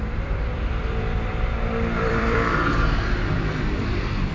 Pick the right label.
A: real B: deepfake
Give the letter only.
B